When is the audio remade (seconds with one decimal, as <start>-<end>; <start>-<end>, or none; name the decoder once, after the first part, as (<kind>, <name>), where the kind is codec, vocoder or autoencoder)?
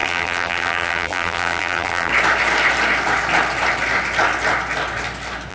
0.0-2.1 (vocoder, BigVGAN v2)